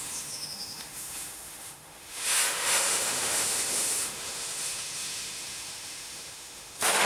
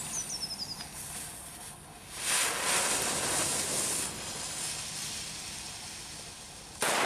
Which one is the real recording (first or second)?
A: second